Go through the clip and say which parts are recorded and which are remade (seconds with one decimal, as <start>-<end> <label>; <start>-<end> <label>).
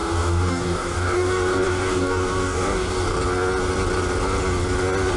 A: 0.0-3.1 remade; 3.1-5.2 recorded